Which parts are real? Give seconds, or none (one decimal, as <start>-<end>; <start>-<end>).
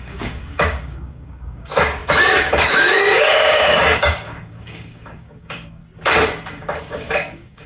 5.8-6.5